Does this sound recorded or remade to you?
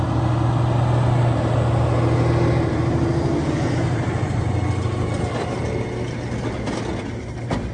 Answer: recorded